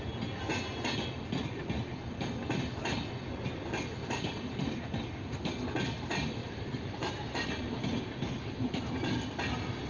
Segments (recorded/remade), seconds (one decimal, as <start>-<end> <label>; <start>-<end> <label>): 0.0-4.0 recorded; 4.0-4.8 remade; 4.8-6.4 recorded; 6.4-7.1 remade; 7.1-7.9 recorded; 7.9-8.8 remade; 8.8-9.9 recorded